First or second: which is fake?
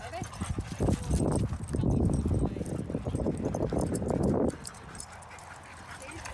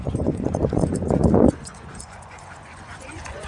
second